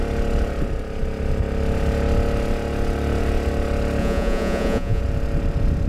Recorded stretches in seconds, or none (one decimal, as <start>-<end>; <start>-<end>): 0.0-4.0; 5.0-5.9